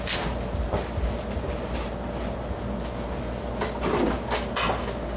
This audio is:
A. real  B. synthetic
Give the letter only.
A